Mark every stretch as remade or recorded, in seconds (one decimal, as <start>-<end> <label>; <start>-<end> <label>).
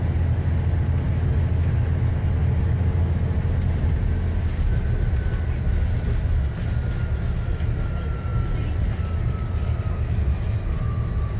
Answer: 0.0-11.4 recorded